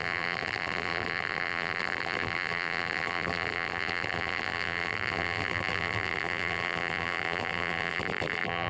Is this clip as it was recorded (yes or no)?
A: no